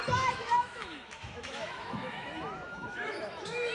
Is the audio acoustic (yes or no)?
no